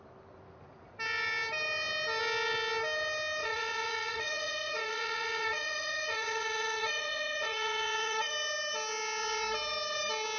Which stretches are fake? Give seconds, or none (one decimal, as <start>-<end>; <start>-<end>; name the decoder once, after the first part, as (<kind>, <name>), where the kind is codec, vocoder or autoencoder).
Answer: 3.4-8.3 (vocoder, Vocos)